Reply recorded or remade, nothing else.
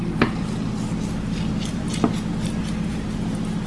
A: recorded